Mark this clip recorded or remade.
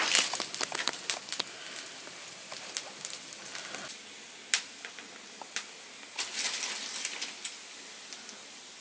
recorded